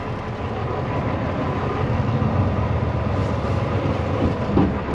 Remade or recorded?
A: recorded